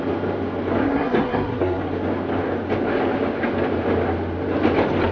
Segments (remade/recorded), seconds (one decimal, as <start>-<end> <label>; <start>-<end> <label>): 0.0-0.8 recorded; 0.8-1.8 remade; 1.8-5.1 recorded